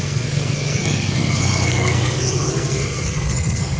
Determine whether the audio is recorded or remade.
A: remade